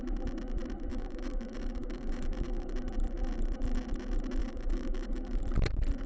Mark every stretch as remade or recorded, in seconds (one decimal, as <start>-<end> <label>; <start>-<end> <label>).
0.0-0.9 recorded; 0.9-2.7 remade; 2.7-4.4 recorded; 4.4-5.4 remade; 5.4-6.1 recorded